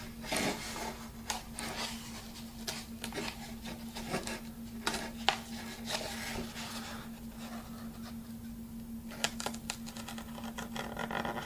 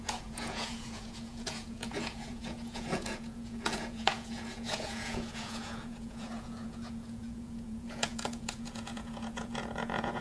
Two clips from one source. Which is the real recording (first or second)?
first